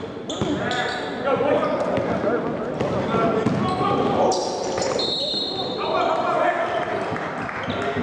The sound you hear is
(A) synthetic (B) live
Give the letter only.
B